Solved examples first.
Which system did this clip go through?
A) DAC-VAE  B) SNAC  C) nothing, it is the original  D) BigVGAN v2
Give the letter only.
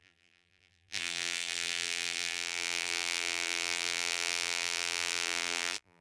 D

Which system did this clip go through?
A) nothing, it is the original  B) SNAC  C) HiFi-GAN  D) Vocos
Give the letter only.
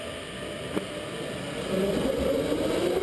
A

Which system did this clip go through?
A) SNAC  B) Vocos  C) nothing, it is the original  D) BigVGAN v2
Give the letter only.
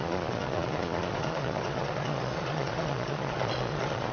B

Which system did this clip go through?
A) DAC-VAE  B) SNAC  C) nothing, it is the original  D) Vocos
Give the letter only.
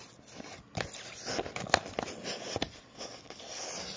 C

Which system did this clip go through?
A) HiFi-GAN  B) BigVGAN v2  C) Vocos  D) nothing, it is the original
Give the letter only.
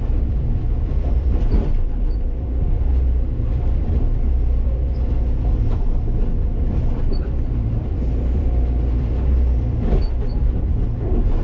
B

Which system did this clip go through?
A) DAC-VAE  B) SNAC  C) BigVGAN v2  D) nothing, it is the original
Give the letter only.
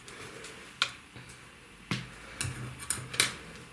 D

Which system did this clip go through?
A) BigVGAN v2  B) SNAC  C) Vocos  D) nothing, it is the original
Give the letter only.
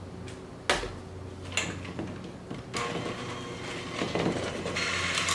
D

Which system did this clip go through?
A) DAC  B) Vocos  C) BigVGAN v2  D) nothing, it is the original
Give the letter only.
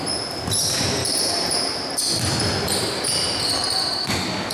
D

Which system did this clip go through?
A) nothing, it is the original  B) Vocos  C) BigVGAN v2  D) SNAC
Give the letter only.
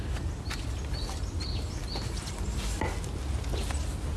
A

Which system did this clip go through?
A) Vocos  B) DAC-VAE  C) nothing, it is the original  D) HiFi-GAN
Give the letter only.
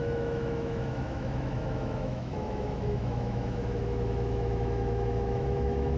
B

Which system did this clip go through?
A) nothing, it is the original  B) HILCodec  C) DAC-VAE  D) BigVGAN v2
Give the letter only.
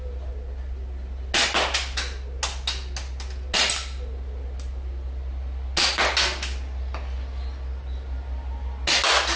A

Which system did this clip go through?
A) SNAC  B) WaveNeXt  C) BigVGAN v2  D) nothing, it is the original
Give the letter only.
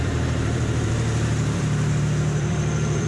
C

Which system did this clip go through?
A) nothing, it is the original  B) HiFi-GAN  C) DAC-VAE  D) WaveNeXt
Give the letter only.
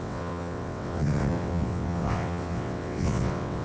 D